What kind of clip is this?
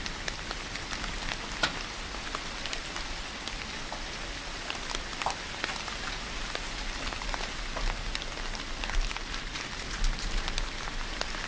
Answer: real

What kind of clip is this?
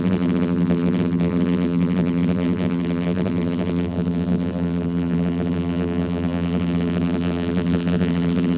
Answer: fake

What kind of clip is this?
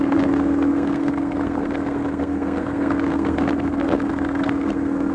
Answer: fake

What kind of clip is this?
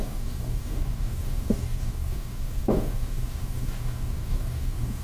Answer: fake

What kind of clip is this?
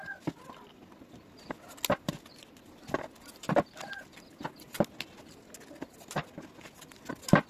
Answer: real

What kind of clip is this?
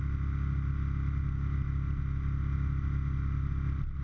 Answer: real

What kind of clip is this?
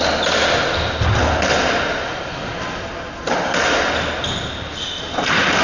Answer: real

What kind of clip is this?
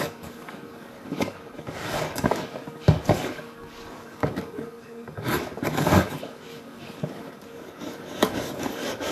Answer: fake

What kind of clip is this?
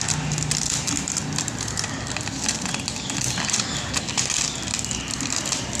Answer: real